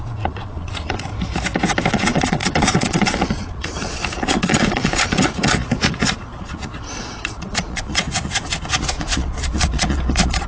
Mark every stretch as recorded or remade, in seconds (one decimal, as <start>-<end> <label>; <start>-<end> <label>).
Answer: 0.0-1.1 remade; 1.1-1.9 recorded; 1.9-10.5 remade